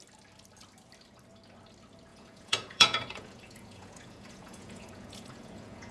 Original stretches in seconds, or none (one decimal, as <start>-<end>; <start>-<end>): 0.0-2.1